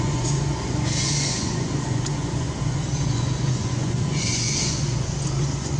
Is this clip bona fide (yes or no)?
no